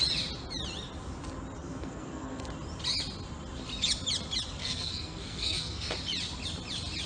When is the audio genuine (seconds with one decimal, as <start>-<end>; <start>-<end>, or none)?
0.0-1.6; 2.4-4.6; 5.9-7.1